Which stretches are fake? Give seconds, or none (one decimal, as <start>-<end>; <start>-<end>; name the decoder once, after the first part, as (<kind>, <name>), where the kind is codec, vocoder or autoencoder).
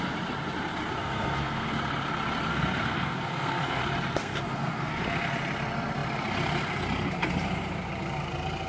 1.0-1.7 (codec, SNAC); 2.5-3.8; 4.2-5.0